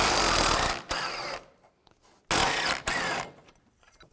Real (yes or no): yes